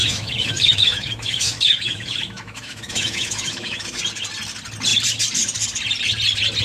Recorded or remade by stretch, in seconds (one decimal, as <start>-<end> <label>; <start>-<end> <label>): 0.0-4.0 remade; 4.0-6.6 recorded